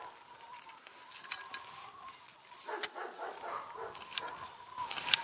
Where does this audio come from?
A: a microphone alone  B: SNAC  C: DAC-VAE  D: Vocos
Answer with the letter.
A